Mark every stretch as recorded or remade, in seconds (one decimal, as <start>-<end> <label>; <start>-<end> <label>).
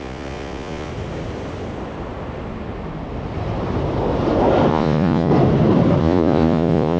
0.0-0.9 remade; 0.9-4.7 recorded; 4.7-5.3 remade; 5.3-6.0 recorded; 6.0-7.0 remade